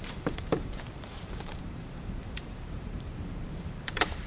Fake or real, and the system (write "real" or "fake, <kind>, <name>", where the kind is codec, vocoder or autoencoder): fake, vocoder, BigVGAN v2